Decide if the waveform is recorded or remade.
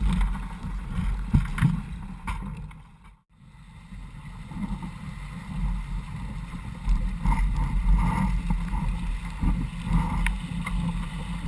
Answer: recorded